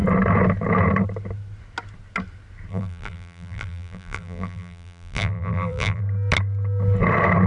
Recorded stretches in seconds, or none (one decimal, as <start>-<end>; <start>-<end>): 0.0-2.7; 6.0-7.5